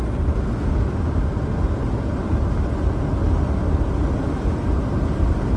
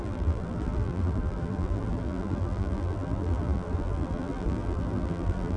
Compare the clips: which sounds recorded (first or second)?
first